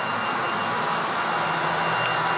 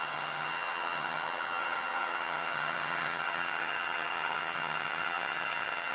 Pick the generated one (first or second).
second